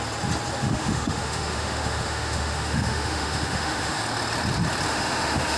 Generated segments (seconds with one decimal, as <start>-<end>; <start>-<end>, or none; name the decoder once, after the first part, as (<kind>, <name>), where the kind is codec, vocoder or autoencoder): 0.6-4.0 (autoencoder, DAC-VAE); 4.9-5.6